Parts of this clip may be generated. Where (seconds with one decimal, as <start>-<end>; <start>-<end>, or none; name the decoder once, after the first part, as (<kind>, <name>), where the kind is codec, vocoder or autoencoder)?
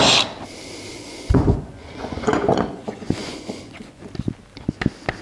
0.9-4.0 (vocoder, Vocos)